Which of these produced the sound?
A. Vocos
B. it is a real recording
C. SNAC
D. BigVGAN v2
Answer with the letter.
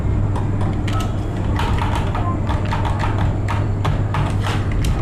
B